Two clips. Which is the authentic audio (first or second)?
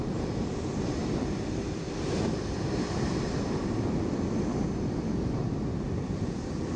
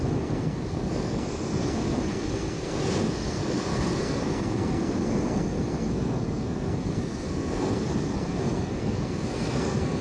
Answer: first